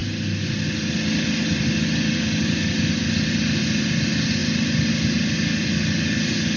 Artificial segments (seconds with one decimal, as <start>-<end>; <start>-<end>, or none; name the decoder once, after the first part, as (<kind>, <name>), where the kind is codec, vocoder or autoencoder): none